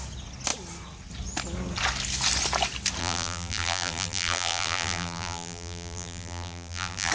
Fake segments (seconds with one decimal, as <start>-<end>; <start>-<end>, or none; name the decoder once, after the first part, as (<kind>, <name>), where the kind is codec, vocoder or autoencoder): 3.0-7.1 (vocoder, BigVGAN v2)